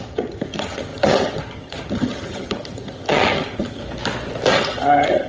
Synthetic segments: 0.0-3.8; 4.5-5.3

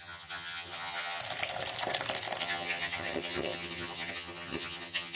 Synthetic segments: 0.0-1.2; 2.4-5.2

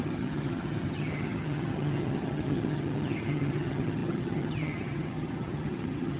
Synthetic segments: 0.0-6.2